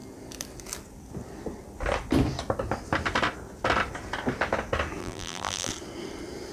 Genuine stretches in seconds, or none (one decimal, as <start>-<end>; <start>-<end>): 0.0-5.0; 5.7-6.5